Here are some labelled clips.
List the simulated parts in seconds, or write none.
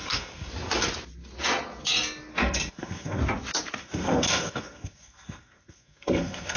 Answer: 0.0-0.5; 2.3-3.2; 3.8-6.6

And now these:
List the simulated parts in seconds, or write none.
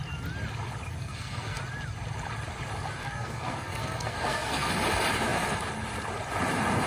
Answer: 1.0-1.6; 3.0-4.7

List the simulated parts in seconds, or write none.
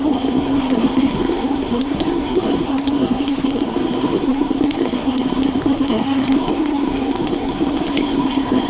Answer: 0.0-8.7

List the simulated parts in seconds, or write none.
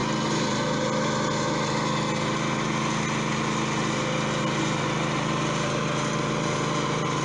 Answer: none